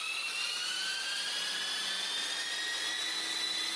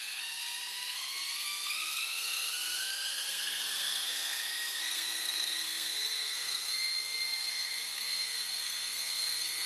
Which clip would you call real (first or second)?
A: first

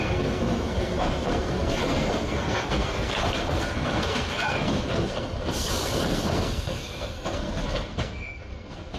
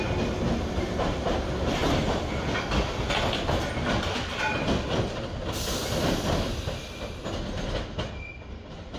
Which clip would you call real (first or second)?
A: second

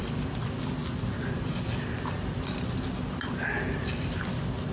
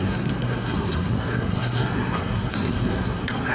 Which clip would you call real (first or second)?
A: first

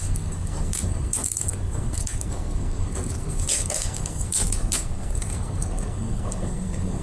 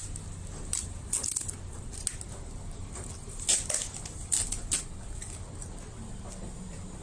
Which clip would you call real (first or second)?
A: second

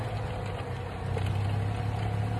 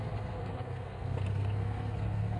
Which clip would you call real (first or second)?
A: first